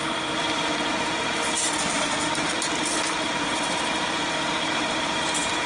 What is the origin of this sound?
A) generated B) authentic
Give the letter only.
B